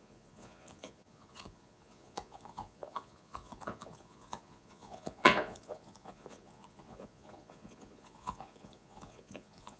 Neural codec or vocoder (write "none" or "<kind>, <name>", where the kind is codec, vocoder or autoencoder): vocoder, Vocos